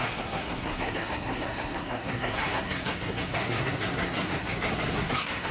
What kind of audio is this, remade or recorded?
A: remade